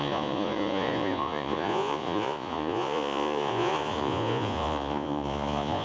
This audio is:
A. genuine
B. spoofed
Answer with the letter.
B